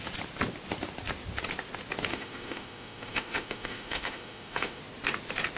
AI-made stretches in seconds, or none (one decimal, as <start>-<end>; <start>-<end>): 2.1-4.8